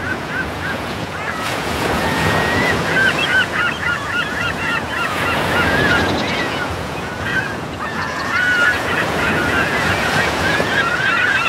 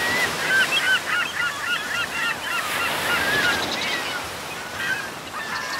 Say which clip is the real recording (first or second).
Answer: second